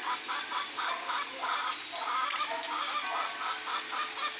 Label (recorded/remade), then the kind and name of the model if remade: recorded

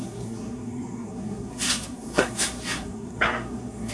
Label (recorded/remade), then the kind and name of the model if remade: remade, codec, SNAC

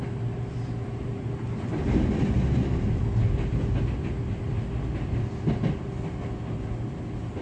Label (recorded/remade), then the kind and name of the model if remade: recorded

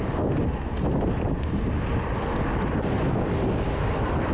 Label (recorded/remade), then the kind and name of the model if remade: recorded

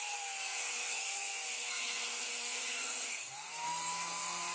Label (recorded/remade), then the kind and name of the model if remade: remade, codec, SNAC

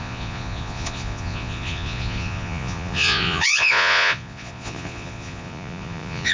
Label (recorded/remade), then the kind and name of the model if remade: remade, vocoder, Vocos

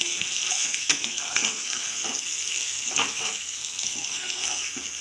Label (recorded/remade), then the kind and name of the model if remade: remade, codec, SNAC